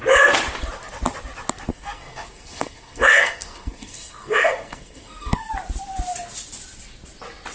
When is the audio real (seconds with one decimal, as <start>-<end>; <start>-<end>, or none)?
0.0-1.7; 5.5-7.5